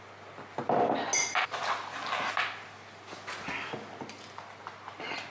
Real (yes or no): yes